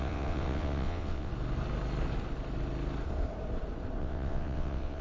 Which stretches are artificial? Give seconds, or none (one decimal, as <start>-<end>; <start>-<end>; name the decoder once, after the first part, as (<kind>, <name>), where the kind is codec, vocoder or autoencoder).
0.0-1.3 (vocoder, WaveNeXt); 4.0-5.0